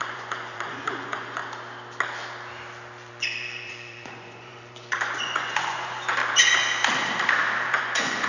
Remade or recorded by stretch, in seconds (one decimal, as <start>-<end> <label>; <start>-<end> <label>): 0.0-1.4 remade; 1.4-3.1 recorded; 3.1-6.2 remade; 6.2-7.7 recorded; 7.7-8.3 remade